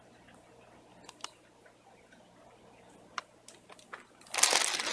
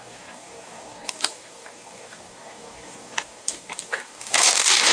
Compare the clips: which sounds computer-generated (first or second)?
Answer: second